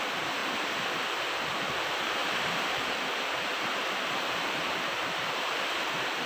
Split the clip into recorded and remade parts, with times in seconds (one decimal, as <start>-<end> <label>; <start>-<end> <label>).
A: 0.0-6.3 remade